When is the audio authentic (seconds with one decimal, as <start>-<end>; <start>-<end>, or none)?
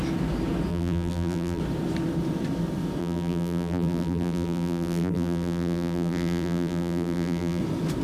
0.0-0.7; 1.6-3.0; 7.6-8.0